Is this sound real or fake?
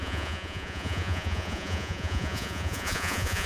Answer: fake